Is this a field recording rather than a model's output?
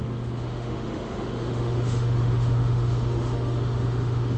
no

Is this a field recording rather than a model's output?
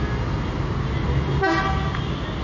yes